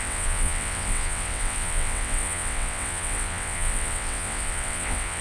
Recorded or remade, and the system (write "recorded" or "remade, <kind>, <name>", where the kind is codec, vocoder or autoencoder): remade, vocoder, WaveNeXt